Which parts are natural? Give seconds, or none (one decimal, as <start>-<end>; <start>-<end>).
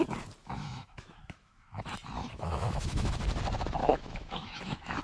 0.0-0.4; 1.8-2.2; 3.1-3.8